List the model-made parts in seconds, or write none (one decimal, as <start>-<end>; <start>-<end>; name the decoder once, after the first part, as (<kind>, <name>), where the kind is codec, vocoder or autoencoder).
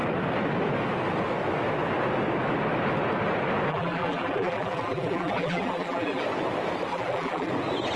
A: 3.7-6.2 (vocoder, BigVGAN v2); 6.9-7.5